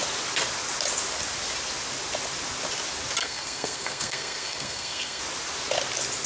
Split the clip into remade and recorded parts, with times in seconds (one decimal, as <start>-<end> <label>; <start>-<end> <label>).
0.0-3.2 recorded; 3.2-5.2 remade; 5.2-6.3 recorded